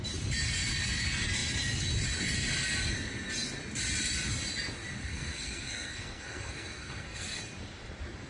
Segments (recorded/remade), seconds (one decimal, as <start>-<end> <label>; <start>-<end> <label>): 0.0-5.0 recorded; 5.0-7.4 remade; 7.4-8.3 recorded